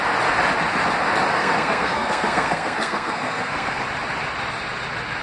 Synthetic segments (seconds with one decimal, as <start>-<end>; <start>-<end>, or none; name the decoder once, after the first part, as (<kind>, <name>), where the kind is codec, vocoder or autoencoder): 1.3-3.8 (codec, SNAC)